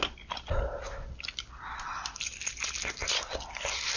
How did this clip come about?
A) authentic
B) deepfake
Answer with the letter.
A